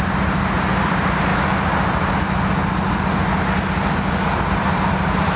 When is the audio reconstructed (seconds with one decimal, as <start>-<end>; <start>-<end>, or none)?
0.0-1.3; 4.5-5.4